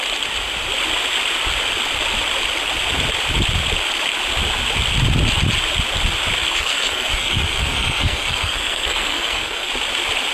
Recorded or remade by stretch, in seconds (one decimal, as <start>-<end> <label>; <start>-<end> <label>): 0.0-6.4 recorded; 6.4-9.7 remade; 9.7-10.3 recorded